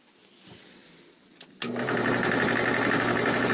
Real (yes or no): yes